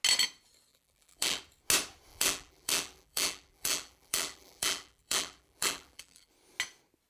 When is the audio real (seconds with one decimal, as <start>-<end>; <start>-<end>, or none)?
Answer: 0.0-0.7; 1.4-2.1; 6.3-7.1